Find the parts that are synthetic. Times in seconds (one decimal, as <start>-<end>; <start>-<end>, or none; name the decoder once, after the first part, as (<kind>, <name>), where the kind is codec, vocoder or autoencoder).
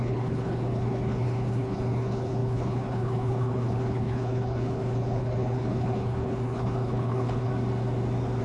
0.0-7.5 (codec, HILCodec)